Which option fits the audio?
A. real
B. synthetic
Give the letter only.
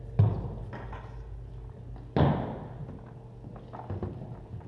A